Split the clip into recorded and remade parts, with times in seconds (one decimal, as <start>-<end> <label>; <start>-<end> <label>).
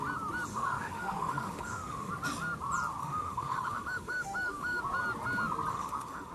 0.0-0.5 recorded; 0.5-2.1 remade; 2.1-3.0 recorded; 3.0-4.8 remade; 4.8-5.7 recorded; 5.7-6.3 remade